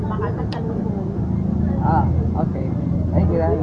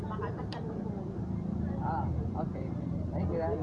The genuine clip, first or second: first